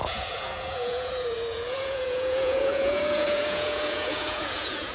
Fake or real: fake